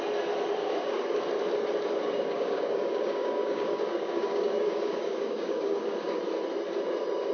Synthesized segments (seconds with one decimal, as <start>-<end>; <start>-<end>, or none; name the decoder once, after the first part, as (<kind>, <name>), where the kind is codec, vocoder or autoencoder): 0.6-1.2 (codec, DAC); 2.0-6.2